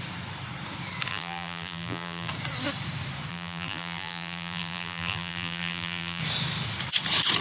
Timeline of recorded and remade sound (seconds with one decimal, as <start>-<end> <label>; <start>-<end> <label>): 0.0-1.1 recorded; 1.1-2.3 remade; 2.3-3.3 recorded; 3.3-6.2 remade; 6.2-7.4 recorded

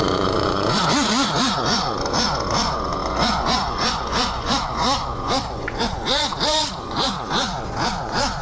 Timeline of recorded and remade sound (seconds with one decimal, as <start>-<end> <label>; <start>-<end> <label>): 0.0-8.4 remade